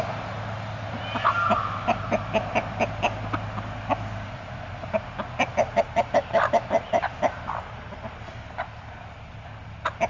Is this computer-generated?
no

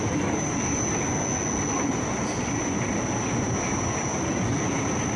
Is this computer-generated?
no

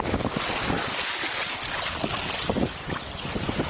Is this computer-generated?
no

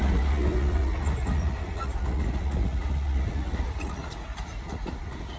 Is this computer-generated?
yes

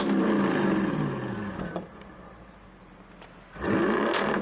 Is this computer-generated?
no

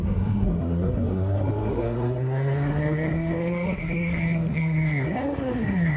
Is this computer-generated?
yes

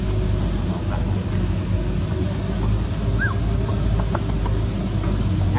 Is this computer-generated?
no